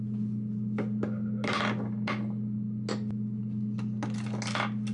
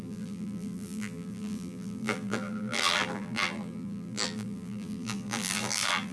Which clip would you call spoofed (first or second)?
second